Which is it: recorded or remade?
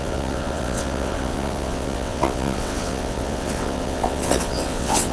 remade